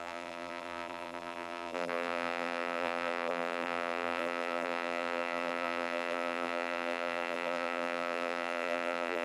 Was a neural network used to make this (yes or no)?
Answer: yes